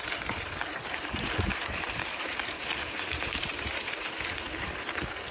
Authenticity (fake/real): fake